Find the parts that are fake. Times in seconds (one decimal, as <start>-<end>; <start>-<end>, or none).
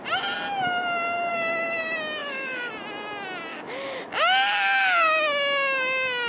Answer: 1.3-1.8; 2.2-2.7; 3.5-4.1